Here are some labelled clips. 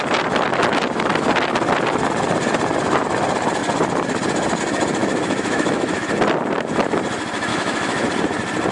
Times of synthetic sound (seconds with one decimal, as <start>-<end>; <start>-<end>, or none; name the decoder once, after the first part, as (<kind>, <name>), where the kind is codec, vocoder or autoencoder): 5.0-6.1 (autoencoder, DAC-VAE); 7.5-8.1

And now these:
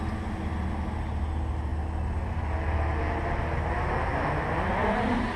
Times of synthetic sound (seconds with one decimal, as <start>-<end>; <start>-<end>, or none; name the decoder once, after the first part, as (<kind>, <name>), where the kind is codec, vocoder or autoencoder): none

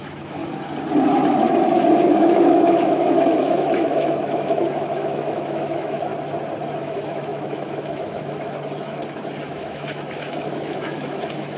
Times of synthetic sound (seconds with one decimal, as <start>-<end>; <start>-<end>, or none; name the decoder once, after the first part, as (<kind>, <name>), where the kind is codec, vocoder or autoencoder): 0.0-0.4 (autoencoder, DAC-VAE); 2.0-6.1; 6.8-9.0; 9.5-11.6

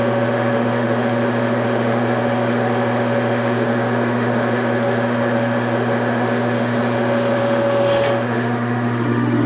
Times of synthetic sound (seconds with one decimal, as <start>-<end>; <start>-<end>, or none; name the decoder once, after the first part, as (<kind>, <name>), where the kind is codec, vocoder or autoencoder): 0.0-9.5 (autoencoder, DAC-VAE)

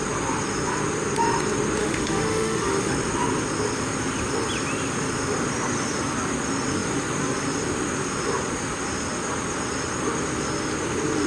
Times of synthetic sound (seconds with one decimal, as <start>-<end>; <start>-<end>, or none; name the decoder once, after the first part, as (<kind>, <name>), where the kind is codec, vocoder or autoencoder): 1.8-2.9 (autoencoder, DAC-VAE)

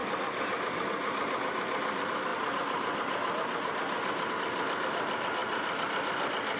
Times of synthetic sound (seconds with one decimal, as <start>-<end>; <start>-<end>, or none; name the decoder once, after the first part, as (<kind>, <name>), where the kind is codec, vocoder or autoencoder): none